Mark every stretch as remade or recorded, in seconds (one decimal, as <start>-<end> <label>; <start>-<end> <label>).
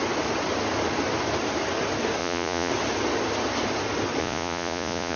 0.0-2.2 recorded; 2.2-2.7 remade; 2.7-4.2 recorded; 4.2-5.2 remade